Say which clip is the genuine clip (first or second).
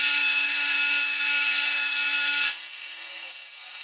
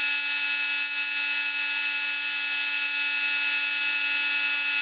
second